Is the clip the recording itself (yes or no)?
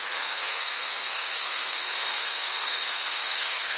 no